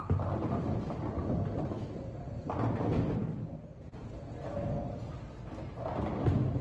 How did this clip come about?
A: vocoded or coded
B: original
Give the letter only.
B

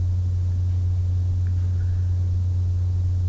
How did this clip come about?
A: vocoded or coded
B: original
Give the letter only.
B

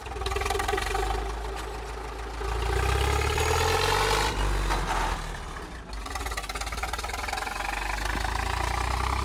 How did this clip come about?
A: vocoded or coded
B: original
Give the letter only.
B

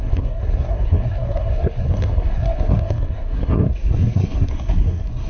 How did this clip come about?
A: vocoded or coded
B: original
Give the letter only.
A